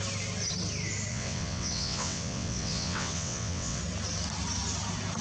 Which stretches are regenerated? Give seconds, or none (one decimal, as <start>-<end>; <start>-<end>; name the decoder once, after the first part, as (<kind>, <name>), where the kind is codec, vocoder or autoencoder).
1.1-3.8 (vocoder, WaveNeXt)